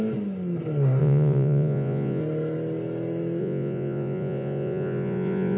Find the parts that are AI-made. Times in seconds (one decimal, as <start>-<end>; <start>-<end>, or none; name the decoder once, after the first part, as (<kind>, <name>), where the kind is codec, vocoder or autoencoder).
1.0-2.2 (vocoder, Vocos); 3.4-5.6